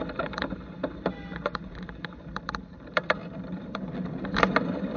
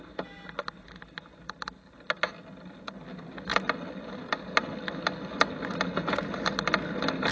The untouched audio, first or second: second